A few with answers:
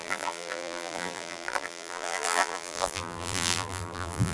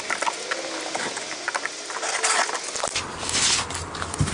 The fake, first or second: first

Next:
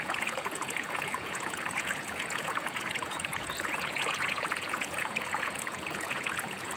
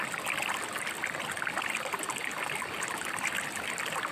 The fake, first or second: first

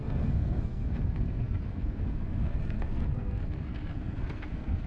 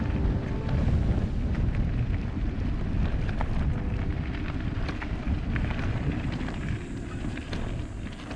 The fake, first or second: first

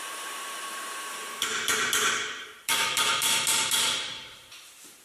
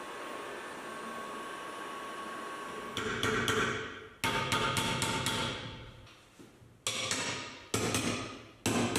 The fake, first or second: first